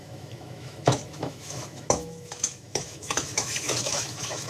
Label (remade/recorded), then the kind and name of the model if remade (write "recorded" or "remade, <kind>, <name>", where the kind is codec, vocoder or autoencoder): remade, autoencoder, DAC-VAE